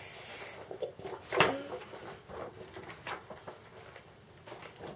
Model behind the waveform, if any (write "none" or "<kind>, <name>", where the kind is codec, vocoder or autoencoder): none